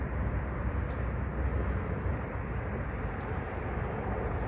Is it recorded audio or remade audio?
recorded